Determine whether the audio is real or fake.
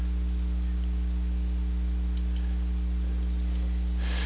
real